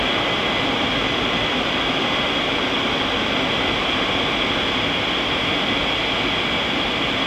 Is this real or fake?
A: real